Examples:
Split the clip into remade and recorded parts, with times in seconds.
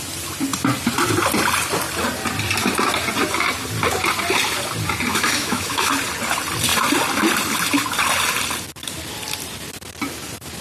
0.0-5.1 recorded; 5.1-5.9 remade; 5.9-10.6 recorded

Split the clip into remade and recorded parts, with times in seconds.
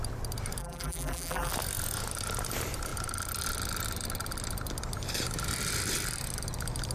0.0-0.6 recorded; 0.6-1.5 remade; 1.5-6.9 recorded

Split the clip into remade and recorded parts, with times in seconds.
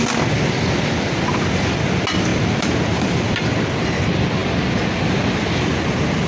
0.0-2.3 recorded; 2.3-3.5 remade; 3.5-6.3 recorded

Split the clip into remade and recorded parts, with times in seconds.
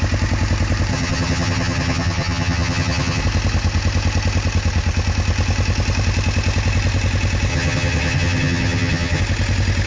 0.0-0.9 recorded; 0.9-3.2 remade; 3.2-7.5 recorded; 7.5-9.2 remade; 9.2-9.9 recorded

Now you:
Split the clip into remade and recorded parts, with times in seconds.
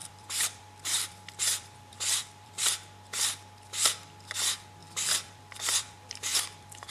0.0-2.6 remade; 2.6-4.8 recorded; 4.8-6.9 remade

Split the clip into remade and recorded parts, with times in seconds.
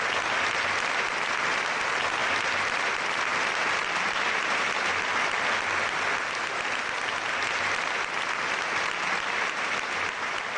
0.0-10.6 recorded